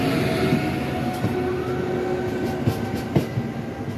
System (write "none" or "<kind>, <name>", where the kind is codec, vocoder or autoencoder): none